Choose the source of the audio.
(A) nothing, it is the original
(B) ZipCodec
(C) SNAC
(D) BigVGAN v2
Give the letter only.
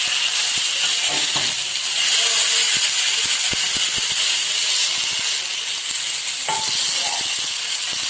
A